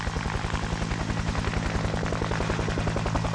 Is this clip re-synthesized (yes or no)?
no